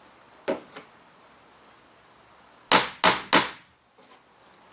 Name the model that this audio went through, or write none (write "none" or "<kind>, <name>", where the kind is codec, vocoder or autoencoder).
none